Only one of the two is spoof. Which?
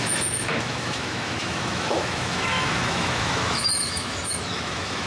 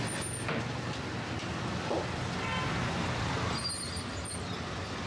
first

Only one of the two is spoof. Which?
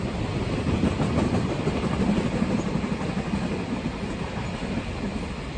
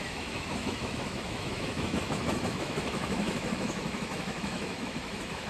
second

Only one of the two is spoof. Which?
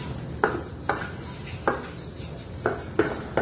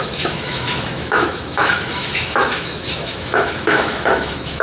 second